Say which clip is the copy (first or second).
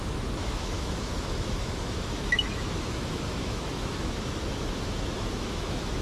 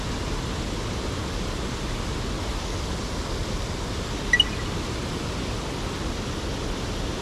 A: first